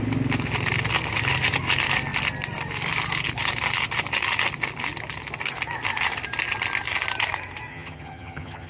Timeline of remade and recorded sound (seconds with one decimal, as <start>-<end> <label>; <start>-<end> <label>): 0.0-7.7 recorded; 7.7-8.7 remade

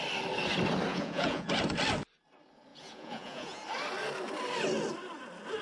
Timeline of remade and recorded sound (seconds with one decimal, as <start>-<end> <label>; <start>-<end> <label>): 0.0-0.9 recorded; 0.9-1.5 remade; 1.5-2.7 recorded; 2.7-3.6 remade; 3.6-5.6 recorded

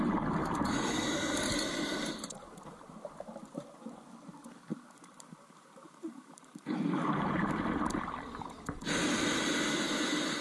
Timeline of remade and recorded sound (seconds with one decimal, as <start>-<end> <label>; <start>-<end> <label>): 0.0-0.4 recorded; 0.4-4.0 remade; 4.0-4.7 recorded; 4.7-7.4 remade; 7.4-10.4 recorded

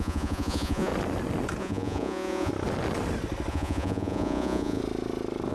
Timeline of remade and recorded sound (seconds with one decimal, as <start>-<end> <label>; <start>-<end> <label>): 0.0-0.9 remade; 0.9-1.6 recorded; 1.6-2.5 remade; 2.5-3.5 recorded; 3.5-4.8 remade; 4.8-5.5 recorded

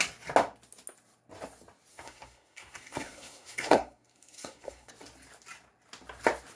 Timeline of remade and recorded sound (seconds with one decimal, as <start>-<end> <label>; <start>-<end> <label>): 0.0-1.9 recorded; 1.9-4.9 remade; 4.9-6.6 recorded

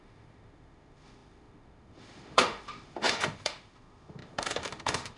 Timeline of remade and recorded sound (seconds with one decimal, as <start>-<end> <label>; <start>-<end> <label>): 0.0-5.2 remade

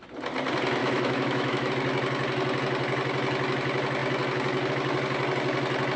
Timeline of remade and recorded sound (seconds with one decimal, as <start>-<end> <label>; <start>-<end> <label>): 0.0-0.8 recorded; 0.8-1.7 remade; 1.7-6.0 recorded